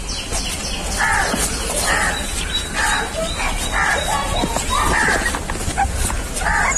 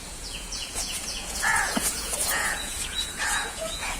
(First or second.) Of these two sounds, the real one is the first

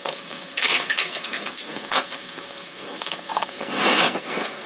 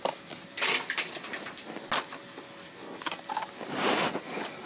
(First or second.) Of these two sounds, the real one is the second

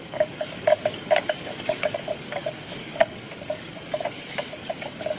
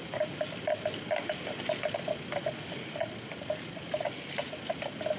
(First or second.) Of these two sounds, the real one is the second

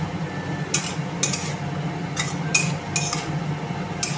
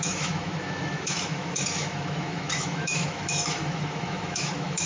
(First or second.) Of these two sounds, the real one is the first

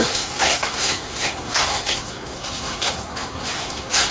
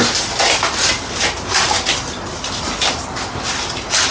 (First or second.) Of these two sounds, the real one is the second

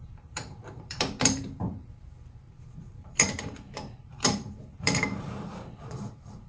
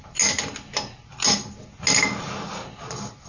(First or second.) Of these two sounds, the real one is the second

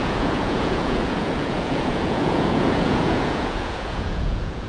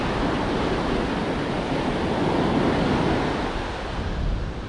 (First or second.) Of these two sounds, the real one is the second